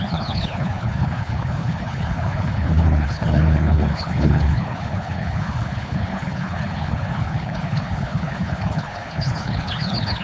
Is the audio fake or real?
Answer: fake